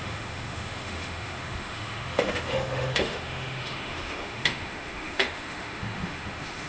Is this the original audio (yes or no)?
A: no